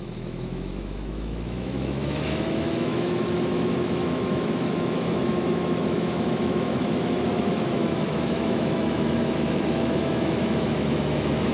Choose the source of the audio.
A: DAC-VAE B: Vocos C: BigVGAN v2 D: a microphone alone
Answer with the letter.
A